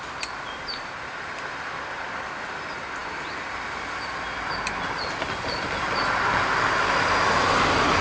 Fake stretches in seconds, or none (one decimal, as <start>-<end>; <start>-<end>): none